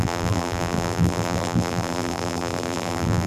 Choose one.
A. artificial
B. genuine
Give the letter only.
A